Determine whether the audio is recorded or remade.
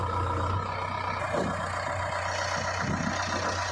recorded